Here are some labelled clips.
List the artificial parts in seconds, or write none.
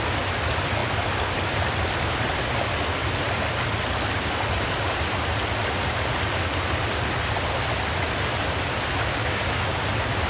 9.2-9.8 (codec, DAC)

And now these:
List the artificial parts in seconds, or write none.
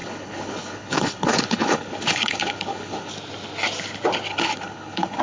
0.0-3.1 (codec, HILCodec); 4.3-5.2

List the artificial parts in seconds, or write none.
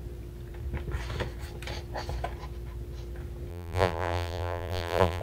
3.5-5.2 (vocoder, BigVGAN v2)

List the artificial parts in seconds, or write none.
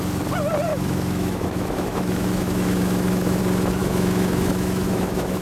0.7-3.4 (autoencoder, DAC-VAE); 3.8-5.4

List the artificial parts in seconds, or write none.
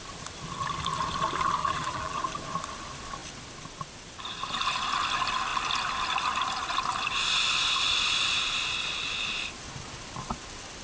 1.6-2.2 (vocoder, BigVGAN v2)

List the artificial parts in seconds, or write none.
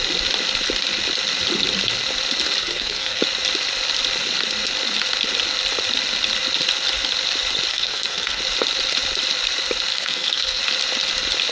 2.6-3.2 (codec, SNAC); 7.7-8.4; 9.9-10.6